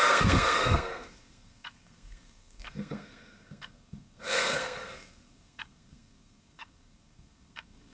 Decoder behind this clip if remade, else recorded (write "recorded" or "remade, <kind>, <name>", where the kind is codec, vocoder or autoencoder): remade, codec, SNAC